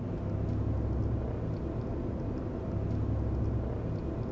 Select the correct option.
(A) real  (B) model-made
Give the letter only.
A